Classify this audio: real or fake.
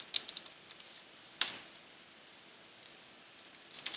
real